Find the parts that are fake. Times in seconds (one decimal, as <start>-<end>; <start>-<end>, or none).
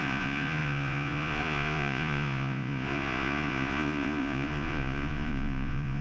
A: 0.0-6.0